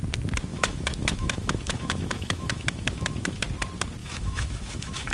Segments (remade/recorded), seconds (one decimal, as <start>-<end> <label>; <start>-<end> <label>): 0.0-0.5 recorded; 0.5-3.4 remade; 3.4-4.0 recorded; 4.0-5.1 remade